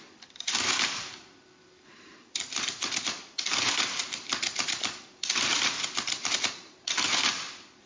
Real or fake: fake